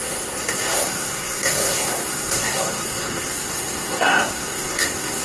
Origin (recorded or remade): remade